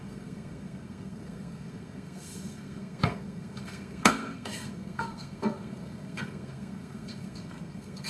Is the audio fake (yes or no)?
yes